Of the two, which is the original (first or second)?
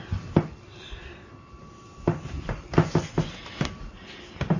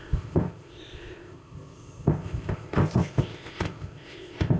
first